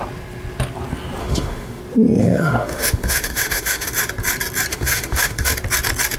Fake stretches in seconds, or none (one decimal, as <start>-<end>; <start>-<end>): 1.2-1.8; 2.2-4.0; 4.7-5.5